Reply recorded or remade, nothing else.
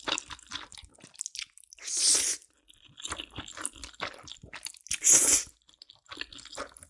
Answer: recorded